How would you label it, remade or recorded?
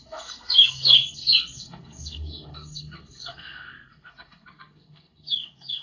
remade